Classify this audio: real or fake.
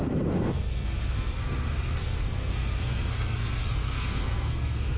fake